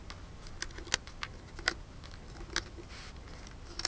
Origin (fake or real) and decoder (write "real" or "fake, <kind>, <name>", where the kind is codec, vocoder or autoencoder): real